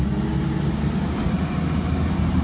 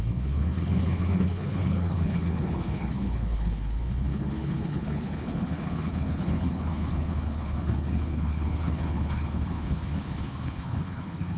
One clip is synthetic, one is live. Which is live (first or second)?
first